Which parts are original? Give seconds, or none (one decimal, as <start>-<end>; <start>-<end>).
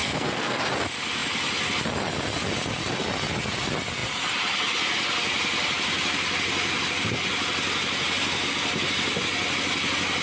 0.6-10.2